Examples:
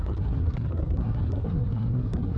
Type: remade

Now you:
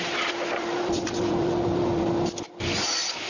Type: remade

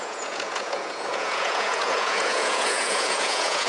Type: remade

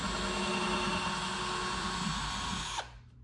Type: recorded